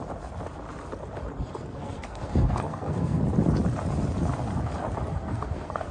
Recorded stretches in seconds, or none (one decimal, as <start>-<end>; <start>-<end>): 0.0-1.6; 3.2-5.1